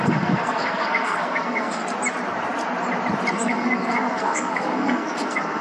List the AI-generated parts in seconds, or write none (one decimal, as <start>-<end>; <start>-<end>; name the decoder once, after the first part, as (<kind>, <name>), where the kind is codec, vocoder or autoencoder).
0.0-1.8 (codec, SNAC); 3.3-5.6